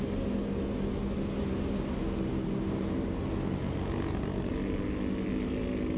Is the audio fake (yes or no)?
no